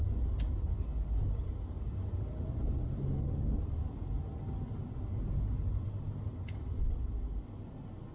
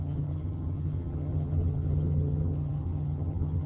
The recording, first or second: first